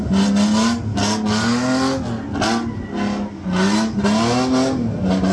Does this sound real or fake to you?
real